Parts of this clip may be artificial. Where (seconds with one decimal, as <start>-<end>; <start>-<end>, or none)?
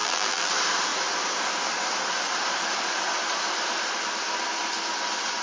0.0-0.5